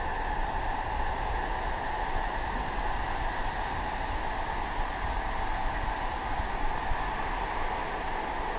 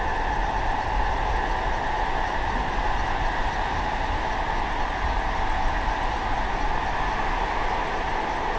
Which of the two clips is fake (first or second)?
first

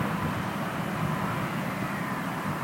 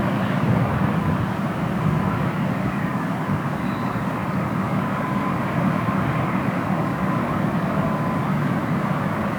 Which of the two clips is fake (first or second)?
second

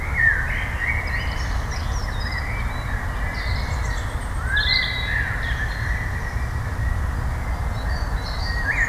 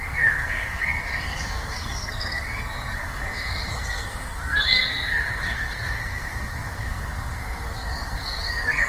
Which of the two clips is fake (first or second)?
second